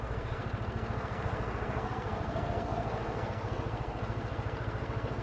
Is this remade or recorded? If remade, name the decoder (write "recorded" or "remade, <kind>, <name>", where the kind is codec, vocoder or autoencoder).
remade, codec, SNAC